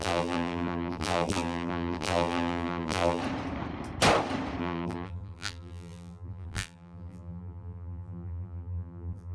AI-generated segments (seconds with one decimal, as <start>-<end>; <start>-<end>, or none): 0.0-3.2; 4.6-9.3